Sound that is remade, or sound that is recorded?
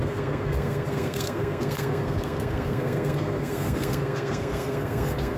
remade